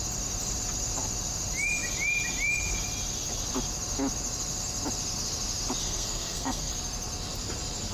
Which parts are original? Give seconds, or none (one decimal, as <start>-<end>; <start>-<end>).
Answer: 0.0-5.8; 6.7-7.9